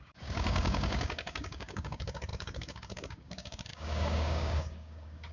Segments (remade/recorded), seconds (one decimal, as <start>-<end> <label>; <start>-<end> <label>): 0.0-5.3 remade